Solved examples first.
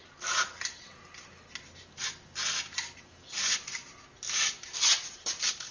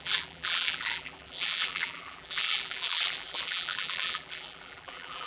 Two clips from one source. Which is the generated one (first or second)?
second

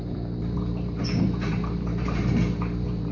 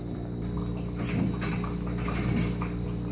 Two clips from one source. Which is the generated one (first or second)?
first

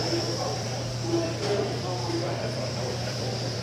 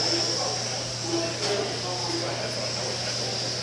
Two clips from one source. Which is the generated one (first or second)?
first